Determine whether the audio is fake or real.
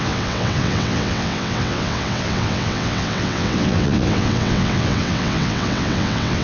fake